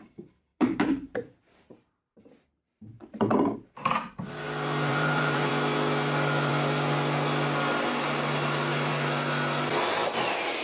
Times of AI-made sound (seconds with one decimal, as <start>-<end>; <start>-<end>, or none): 0.5-2.2; 4.9-5.5